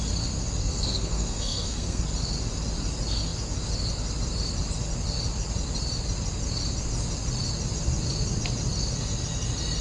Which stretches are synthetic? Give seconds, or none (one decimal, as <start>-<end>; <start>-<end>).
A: 0.6-2.0